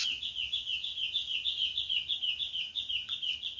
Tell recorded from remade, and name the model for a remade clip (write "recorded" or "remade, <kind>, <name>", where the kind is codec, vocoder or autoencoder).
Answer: recorded